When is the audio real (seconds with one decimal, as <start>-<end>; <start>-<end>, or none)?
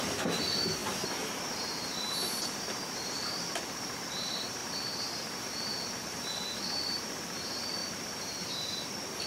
none